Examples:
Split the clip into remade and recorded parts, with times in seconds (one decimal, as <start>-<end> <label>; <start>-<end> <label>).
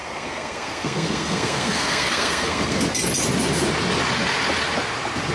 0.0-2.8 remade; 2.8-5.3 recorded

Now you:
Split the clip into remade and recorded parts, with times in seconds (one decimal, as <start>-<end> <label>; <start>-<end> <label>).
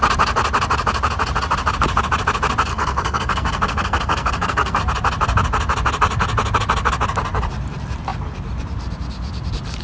0.0-2.7 recorded; 2.7-4.8 remade; 4.8-9.8 recorded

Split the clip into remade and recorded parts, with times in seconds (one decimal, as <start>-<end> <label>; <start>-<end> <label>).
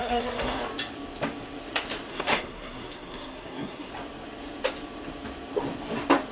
0.0-0.6 remade; 0.6-2.1 recorded; 2.1-3.9 remade; 3.9-6.3 recorded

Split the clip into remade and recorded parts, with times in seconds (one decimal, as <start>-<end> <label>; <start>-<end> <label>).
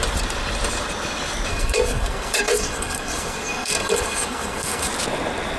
0.0-1.5 recorded; 1.5-4.9 remade; 4.9-5.6 recorded